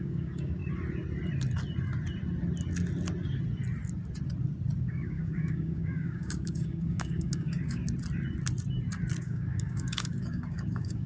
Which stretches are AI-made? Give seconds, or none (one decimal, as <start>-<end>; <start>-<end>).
0.0-0.6; 4.8-7.8; 9.2-11.1